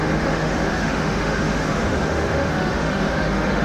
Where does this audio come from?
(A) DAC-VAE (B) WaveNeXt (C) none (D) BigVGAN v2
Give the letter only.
A